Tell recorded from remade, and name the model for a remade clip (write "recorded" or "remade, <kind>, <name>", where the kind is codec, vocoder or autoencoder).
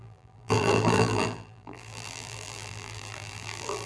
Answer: remade, vocoder, BigVGAN v2